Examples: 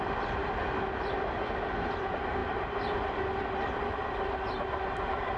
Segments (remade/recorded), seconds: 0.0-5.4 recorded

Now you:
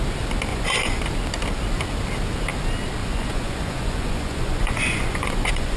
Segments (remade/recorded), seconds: 0.0-0.5 recorded; 0.5-1.0 remade; 1.0-3.0 recorded; 3.0-5.8 remade